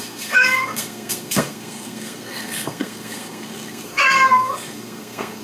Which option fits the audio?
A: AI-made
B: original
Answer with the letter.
A